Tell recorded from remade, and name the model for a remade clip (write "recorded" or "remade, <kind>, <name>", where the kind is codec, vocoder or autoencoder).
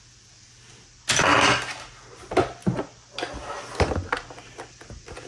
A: recorded